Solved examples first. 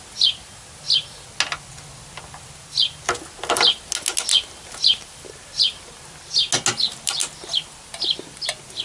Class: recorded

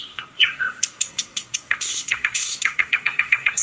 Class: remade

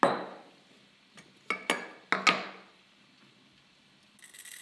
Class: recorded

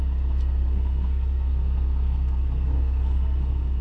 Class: remade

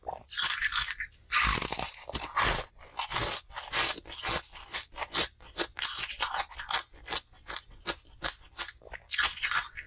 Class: recorded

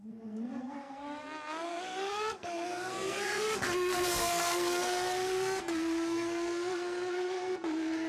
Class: remade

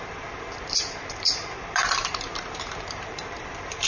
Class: remade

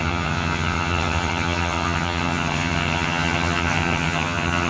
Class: remade